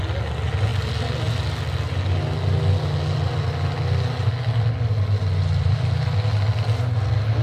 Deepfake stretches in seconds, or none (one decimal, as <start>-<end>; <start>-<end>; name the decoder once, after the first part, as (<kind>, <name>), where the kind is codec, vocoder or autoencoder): none